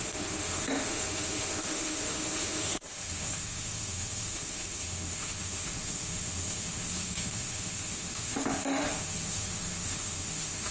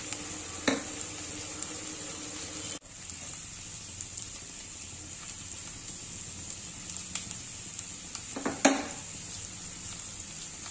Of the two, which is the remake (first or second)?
first